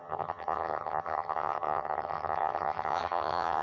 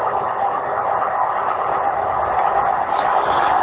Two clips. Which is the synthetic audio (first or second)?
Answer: first